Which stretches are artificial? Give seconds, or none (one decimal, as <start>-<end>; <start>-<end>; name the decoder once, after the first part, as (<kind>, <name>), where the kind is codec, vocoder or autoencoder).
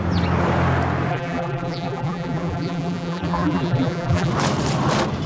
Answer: 1.1-4.3 (vocoder, BigVGAN v2)